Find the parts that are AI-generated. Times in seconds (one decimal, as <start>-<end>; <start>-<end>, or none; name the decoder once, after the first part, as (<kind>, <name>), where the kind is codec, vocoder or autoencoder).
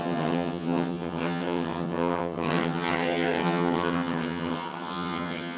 0.0-5.6 (vocoder, HiFi-GAN)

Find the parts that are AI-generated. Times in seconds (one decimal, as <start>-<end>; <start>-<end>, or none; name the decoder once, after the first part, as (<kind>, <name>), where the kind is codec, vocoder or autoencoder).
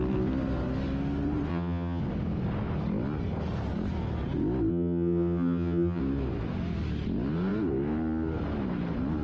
1.5-2.0 (vocoder, HiFi-GAN); 4.7-6.0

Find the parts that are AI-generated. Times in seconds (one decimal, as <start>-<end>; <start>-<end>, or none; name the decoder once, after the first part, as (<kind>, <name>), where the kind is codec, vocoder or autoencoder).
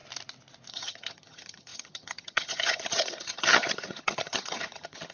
0.7-5.1 (vocoder, HiFi-GAN)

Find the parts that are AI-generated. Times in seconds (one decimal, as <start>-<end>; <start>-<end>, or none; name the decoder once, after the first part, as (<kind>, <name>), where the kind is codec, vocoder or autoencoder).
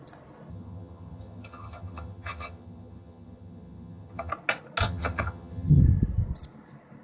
0.5-4.3 (vocoder, HiFi-GAN); 4.8-5.8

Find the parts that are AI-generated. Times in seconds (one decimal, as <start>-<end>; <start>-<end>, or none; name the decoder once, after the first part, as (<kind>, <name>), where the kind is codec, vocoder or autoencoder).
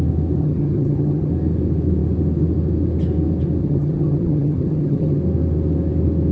0.4-1.3 (vocoder, HiFi-GAN); 3.6-5.2